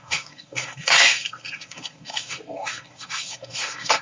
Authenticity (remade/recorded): remade